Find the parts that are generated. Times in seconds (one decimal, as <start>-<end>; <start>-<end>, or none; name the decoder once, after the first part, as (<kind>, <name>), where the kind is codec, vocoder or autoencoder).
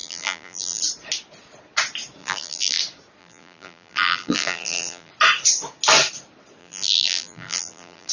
0.0-0.8 (vocoder, BigVGAN v2); 2.2-2.8; 3.2-5.1; 6.6-8.1